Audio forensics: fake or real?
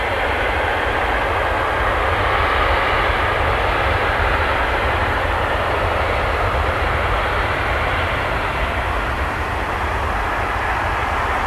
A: real